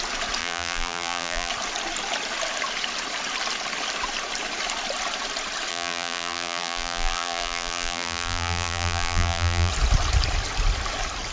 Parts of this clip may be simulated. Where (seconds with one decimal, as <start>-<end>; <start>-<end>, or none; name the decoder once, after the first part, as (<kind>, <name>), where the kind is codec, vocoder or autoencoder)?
0.4-1.5 (vocoder, BigVGAN v2); 5.7-9.7